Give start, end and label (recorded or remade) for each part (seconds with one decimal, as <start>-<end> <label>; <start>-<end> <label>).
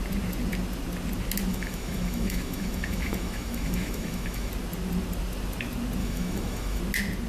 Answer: 0.0-1.5 recorded; 1.5-4.5 remade; 4.5-6.0 recorded; 6.0-6.8 remade; 6.8-7.3 recorded